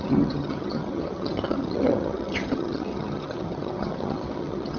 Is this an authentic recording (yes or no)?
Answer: no